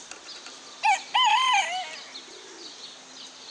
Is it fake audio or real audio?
real